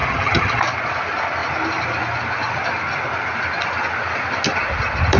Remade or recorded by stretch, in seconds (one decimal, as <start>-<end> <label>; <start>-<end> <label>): 0.0-0.6 remade; 0.6-5.2 recorded